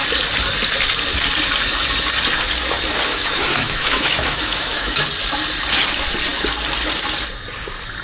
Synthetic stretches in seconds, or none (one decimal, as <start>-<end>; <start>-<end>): 3.1-5.0